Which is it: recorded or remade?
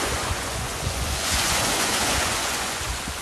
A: remade